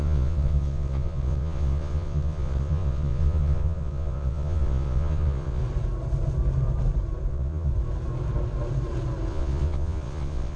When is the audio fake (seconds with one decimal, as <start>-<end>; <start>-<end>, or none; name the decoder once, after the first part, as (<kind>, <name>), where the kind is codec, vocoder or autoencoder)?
0.0-5.6 (vocoder, Vocos); 7.3-7.7; 9.3-10.6